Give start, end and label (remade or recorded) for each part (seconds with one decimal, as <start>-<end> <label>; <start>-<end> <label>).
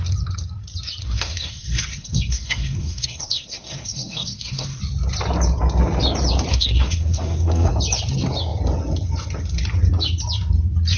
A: 0.0-1.0 recorded; 1.0-4.8 remade; 4.8-6.5 recorded; 6.5-7.7 remade; 7.7-11.0 recorded